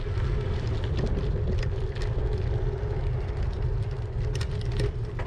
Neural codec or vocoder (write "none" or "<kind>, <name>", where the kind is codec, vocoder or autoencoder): none